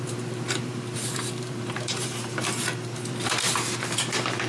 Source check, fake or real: fake